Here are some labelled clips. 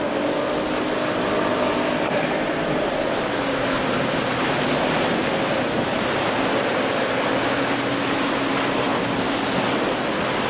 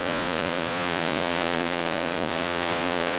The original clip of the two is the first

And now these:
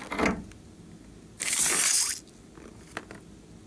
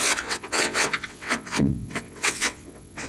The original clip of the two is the first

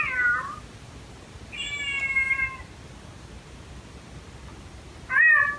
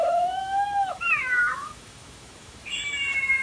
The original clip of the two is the first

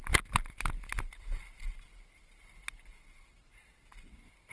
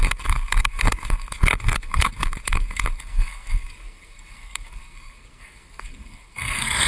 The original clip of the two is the first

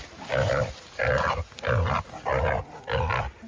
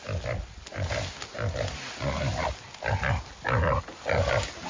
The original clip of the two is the second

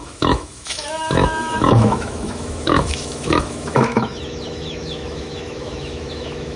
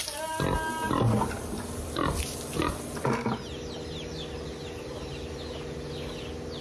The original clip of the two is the second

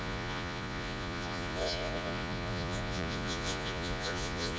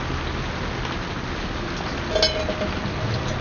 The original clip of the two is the second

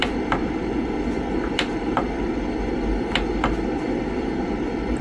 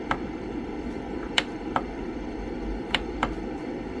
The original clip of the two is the first